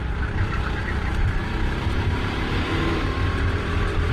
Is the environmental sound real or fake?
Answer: fake